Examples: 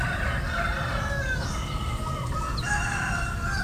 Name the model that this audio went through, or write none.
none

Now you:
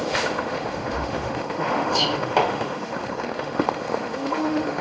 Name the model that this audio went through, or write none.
autoencoder, DAC-VAE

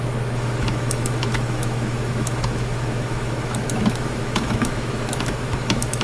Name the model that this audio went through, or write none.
autoencoder, DAC-VAE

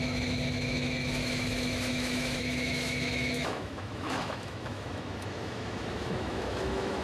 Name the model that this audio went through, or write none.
autoencoder, DAC-VAE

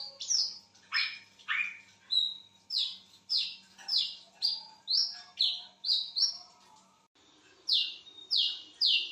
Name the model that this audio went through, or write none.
none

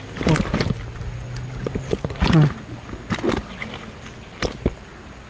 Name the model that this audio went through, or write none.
none